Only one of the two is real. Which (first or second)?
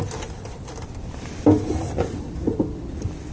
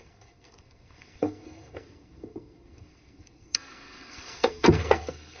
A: first